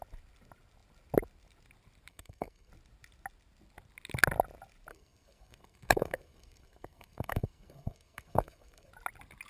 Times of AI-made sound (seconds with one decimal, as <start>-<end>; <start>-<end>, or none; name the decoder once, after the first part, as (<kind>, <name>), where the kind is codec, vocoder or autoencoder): 2.1-2.7 (codec, SNAC); 4.9-8.9